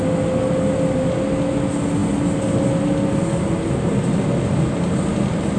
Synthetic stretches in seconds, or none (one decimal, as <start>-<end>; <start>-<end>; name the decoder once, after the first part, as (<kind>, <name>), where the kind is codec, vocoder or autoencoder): none